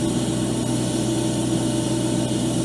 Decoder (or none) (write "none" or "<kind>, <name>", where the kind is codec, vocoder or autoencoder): none